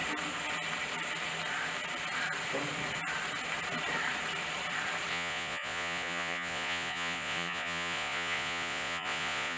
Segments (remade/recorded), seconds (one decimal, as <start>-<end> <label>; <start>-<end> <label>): 0.0-5.1 recorded; 5.1-9.6 remade